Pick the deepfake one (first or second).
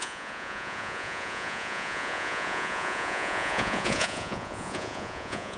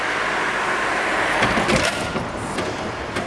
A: first